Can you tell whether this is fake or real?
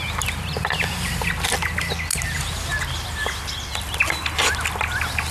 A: real